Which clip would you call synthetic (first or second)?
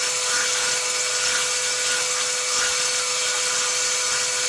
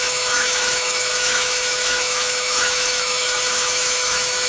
second